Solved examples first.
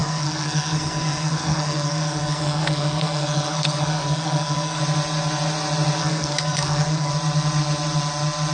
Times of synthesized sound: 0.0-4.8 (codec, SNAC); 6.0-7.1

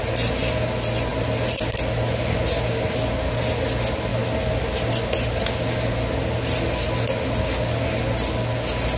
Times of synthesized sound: none